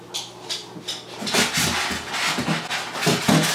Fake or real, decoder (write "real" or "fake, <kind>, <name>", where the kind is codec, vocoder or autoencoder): real